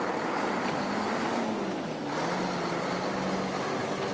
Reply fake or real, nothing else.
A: real